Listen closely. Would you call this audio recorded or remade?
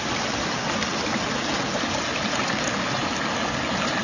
recorded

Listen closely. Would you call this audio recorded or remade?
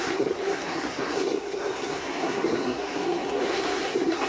remade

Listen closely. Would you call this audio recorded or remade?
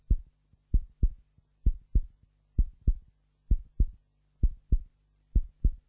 recorded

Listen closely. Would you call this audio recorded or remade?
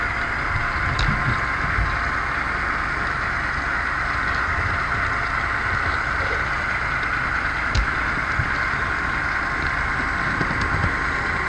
recorded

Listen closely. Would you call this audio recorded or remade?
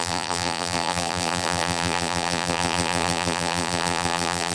remade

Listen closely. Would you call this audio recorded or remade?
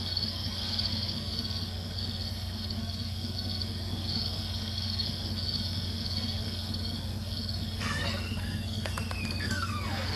remade